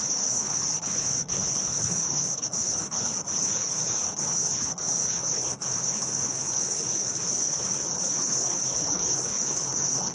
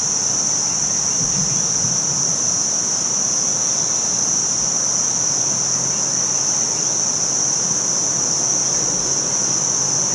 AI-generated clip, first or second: first